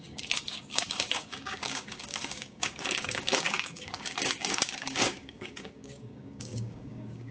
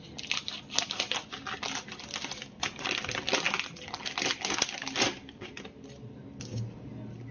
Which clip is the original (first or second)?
second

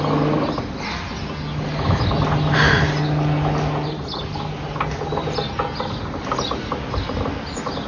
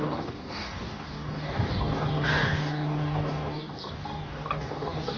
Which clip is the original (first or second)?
first